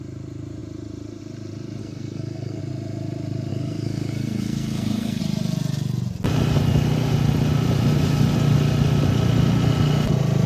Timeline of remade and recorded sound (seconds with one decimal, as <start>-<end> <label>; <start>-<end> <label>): 0.0-1.8 recorded; 1.8-2.6 remade; 2.6-3.5 recorded; 3.5-5.2 remade; 5.2-10.5 recorded